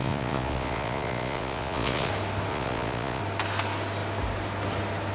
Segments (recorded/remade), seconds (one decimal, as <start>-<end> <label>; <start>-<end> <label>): 0.0-2.1 remade; 2.1-2.5 recorded; 2.5-3.2 remade; 3.2-5.1 recorded